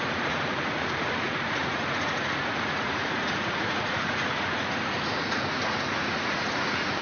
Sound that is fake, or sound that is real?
fake